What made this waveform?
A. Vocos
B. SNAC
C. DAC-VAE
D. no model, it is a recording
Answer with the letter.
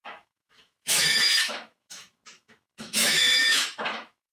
C